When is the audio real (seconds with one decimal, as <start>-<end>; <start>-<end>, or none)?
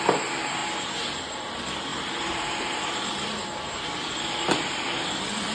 0.6-1.2; 3.4-4.0